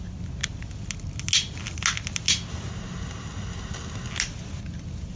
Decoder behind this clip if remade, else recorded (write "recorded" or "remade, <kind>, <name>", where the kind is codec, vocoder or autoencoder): recorded